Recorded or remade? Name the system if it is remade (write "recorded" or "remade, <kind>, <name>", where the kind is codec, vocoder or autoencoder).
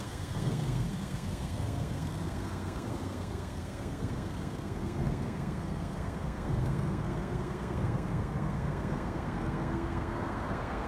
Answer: remade, codec, SNAC